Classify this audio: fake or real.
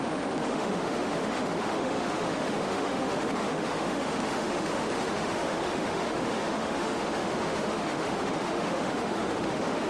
fake